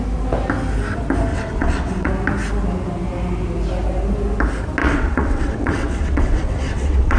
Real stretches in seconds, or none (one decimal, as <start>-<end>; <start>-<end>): 0.0-1.3; 2.1-4.8